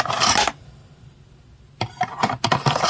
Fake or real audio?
real